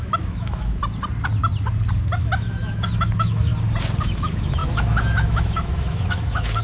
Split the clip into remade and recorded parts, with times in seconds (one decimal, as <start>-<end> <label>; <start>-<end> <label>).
0.0-0.8 remade; 0.8-2.2 recorded; 2.2-3.5 remade; 3.5-4.0 recorded; 4.0-6.6 remade

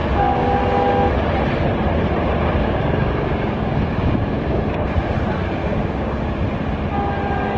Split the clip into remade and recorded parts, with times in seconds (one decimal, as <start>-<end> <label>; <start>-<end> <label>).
0.0-0.6 remade; 0.6-2.6 recorded; 2.6-4.9 remade; 4.9-5.6 recorded; 5.6-6.2 remade; 6.2-7.6 recorded

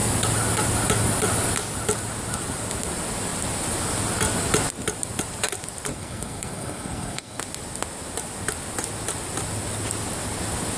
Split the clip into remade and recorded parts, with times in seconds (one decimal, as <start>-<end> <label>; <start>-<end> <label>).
0.0-5.9 recorded; 5.9-7.4 remade; 7.4-10.8 recorded

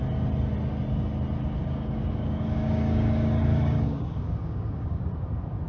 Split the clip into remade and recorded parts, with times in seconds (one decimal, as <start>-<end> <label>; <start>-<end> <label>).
0.0-1.6 recorded; 1.6-5.0 remade; 5.0-5.7 recorded

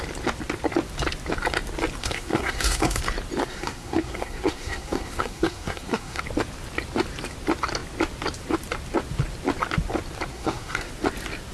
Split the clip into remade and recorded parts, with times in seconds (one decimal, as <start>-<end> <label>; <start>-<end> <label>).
0.0-2.0 recorded; 2.0-3.0 remade; 3.0-3.4 recorded; 3.4-6.2 remade; 6.2-10.3 recorded; 10.3-10.9 remade; 10.9-11.5 recorded

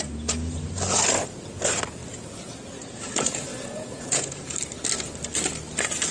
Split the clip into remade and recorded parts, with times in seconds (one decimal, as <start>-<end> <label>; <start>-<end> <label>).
0.0-3.5 recorded; 3.5-4.4 remade; 4.4-6.1 recorded

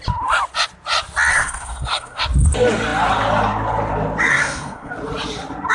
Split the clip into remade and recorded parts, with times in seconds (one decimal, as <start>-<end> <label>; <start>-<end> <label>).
0.0-1.3 recorded; 1.3-2.2 remade; 2.2-4.3 recorded; 4.3-4.9 remade; 4.9-5.7 recorded

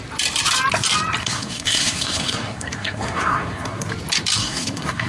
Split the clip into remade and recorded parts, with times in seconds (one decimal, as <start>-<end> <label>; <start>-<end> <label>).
0.0-1.2 recorded; 1.2-3.9 remade; 3.9-4.4 recorded; 4.4-5.1 remade